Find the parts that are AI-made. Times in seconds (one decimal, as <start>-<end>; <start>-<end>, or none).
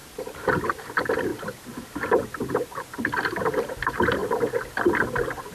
none